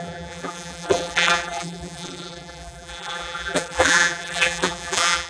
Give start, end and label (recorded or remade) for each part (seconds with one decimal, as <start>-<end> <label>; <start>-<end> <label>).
0.0-5.3 remade